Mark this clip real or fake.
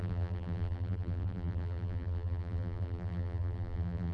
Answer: fake